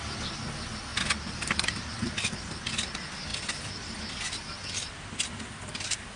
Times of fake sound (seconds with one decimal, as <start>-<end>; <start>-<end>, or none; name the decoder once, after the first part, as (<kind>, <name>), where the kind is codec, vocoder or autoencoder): none